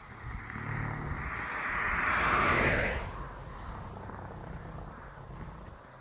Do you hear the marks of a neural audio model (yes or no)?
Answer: no